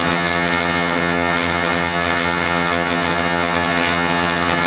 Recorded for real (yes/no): no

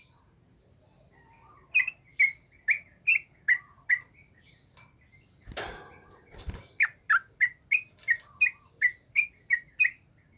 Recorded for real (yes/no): yes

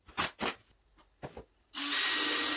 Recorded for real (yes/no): yes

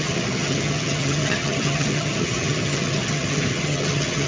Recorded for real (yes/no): no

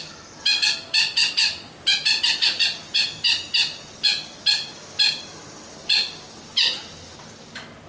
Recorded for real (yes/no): yes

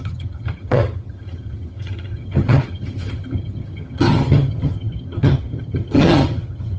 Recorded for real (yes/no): no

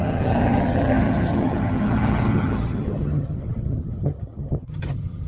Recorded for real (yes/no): no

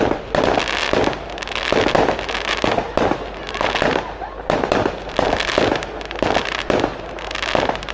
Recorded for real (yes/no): yes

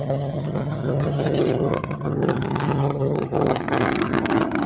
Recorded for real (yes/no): no